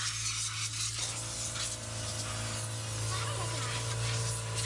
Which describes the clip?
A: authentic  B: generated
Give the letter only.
A